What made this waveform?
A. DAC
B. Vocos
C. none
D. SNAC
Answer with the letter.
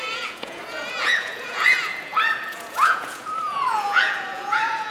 B